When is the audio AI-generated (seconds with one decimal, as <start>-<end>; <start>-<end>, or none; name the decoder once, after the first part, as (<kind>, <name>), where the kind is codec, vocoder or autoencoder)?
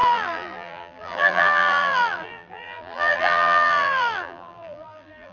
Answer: 0.0-5.3 (vocoder, BigVGAN v2)